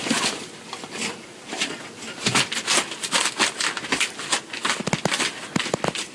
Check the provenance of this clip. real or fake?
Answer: real